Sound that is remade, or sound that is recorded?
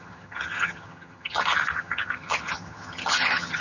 remade